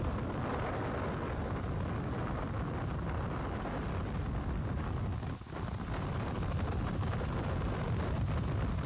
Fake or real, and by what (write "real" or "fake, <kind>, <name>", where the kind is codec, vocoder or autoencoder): real